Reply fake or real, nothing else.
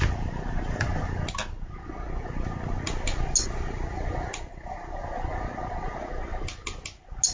real